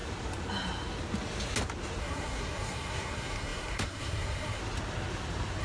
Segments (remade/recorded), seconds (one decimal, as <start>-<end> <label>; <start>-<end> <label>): 0.0-2.0 recorded; 2.0-4.6 remade; 4.6-5.6 recorded